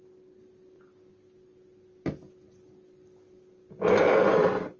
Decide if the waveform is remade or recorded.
recorded